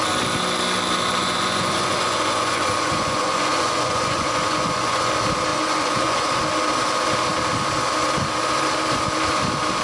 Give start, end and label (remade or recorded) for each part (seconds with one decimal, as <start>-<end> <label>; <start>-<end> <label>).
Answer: 0.0-1.2 recorded; 1.2-5.1 remade; 5.1-5.5 recorded; 5.5-6.4 remade; 6.4-9.8 recorded